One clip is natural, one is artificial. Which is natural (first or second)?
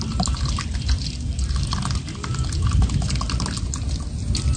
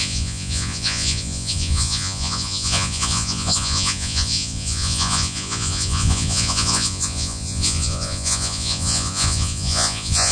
first